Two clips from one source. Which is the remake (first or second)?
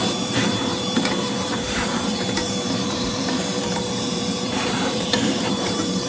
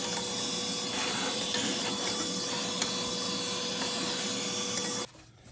first